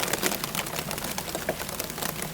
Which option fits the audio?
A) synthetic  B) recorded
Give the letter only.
B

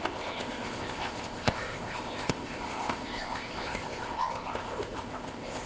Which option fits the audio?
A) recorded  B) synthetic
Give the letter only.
B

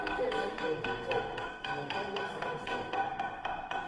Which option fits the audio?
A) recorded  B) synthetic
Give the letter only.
B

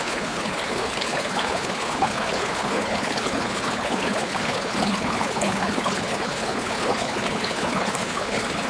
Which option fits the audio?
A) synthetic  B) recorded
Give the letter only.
A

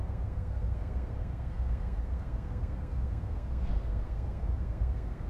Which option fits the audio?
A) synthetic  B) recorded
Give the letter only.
A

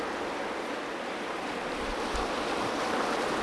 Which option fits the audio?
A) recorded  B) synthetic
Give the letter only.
A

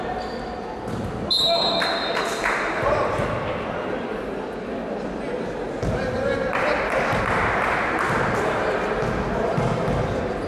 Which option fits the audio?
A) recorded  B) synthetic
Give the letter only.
A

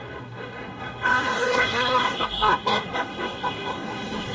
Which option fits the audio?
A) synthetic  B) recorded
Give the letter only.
A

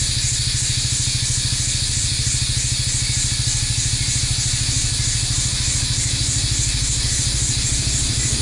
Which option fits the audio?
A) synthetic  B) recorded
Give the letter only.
B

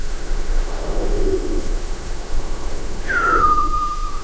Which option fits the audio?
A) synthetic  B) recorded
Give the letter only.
A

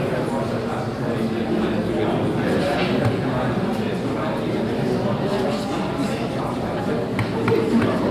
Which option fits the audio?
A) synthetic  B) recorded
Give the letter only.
B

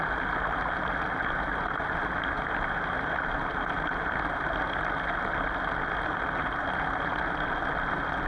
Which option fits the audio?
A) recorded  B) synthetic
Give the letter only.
A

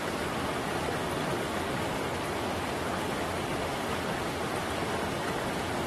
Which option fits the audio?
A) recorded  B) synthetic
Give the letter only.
A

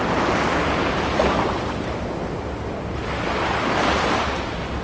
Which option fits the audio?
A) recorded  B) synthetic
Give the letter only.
A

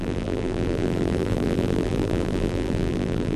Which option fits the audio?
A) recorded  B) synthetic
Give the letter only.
B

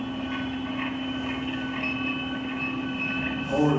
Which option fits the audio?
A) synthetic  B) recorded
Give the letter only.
B